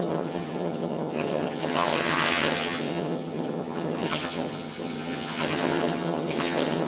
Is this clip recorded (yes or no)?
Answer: no